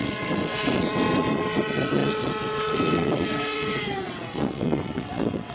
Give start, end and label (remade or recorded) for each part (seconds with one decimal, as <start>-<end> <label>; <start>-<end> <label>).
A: 0.0-5.5 remade